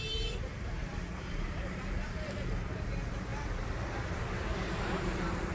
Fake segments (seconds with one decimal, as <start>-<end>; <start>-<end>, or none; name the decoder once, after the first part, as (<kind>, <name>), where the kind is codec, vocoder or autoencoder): 0.0-5.5 (vocoder, BigVGAN v2)